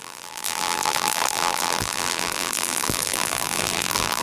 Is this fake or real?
fake